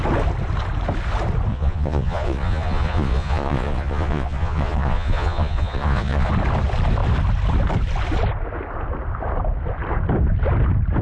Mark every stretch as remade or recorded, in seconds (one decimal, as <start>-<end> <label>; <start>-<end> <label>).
0.0-1.5 recorded; 1.5-6.3 remade; 6.3-11.0 recorded